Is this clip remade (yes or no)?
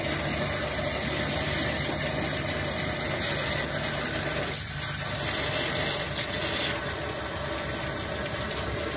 no